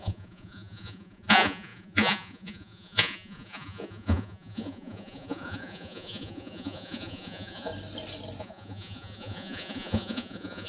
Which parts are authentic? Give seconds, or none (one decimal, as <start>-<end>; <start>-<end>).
7.7-8.4